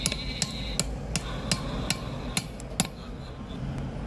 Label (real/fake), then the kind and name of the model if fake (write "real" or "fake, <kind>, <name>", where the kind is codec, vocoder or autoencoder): real